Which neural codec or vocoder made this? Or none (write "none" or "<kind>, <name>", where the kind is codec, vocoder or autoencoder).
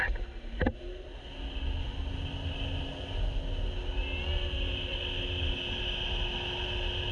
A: none